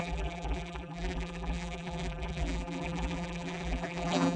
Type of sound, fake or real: fake